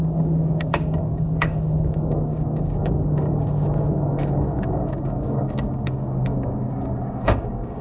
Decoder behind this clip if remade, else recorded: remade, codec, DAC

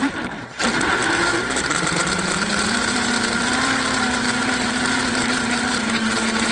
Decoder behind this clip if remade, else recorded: remade, vocoder, BigVGAN v2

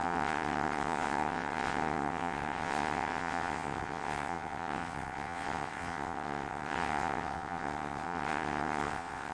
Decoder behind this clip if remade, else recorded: remade, vocoder, WaveNeXt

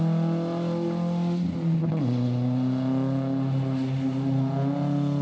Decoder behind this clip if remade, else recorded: recorded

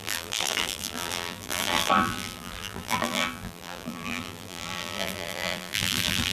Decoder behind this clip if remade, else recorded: remade, vocoder, BigVGAN v2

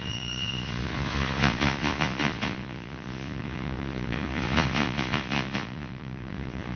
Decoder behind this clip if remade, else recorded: remade, vocoder, Vocos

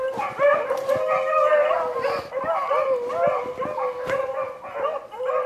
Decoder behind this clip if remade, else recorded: recorded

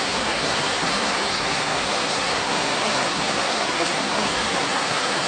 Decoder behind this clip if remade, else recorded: remade, codec, SNAC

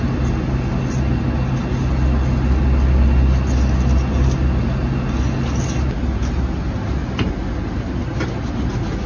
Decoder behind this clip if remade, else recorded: recorded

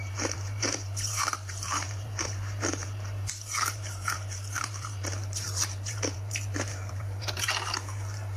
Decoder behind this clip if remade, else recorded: remade, vocoder, BigVGAN v2